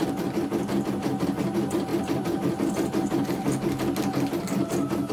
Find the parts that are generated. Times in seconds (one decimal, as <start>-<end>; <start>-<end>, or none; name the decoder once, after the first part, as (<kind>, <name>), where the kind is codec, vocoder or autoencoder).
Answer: none